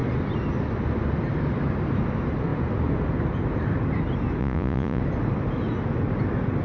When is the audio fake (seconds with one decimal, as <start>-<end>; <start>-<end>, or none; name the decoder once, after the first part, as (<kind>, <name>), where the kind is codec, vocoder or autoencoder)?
4.4-5.0 (vocoder, Vocos)

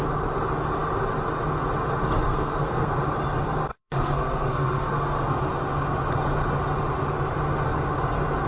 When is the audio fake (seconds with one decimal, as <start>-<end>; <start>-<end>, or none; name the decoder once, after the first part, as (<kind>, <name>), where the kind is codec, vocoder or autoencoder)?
2.3-2.9 (codec, SNAC); 3.7-5.4

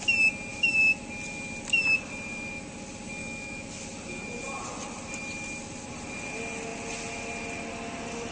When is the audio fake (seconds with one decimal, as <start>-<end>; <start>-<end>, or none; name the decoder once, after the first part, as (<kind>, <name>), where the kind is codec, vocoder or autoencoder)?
0.5-1.0 (autoencoder, DAC-VAE); 3.2-3.8

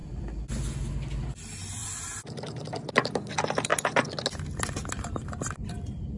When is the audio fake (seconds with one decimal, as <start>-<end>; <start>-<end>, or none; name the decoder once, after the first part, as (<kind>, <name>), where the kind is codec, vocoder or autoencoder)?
none

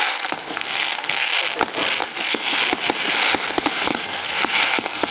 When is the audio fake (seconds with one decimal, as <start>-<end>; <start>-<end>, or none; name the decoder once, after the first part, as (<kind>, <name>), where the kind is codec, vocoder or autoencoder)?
0.0-1.3 (codec, SNAC); 2.0-2.6; 3.5-5.1

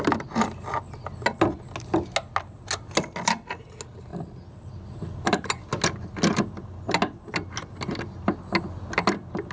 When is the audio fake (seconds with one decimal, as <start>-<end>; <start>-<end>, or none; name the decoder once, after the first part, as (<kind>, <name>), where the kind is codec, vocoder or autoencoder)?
none

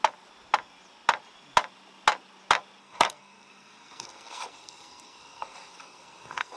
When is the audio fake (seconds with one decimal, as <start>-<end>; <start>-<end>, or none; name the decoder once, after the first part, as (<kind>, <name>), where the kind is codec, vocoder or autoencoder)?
2.8-6.6 (codec, SNAC)

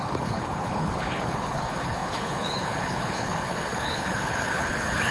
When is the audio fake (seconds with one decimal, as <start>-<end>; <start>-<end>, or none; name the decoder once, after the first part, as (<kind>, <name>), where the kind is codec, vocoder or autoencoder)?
0.0-5.1 (codec, HILCodec)